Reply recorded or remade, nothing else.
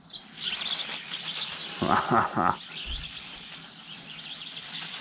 recorded